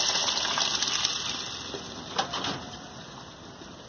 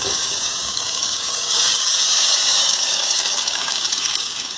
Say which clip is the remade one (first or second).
second